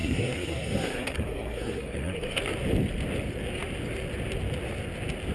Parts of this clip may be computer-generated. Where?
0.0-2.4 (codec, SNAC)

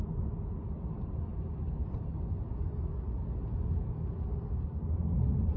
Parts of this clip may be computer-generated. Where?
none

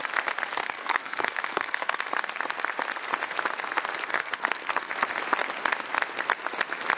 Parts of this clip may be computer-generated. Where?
0.6-2.0 (codec, SNAC); 4.1-4.9